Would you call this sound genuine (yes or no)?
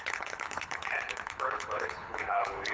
no